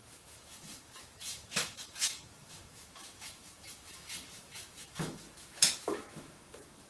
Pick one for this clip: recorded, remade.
remade